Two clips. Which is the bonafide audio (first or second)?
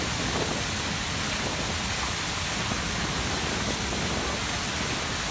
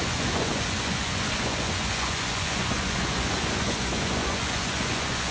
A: first